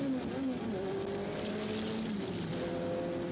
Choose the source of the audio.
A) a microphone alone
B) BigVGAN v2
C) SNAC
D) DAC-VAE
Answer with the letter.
A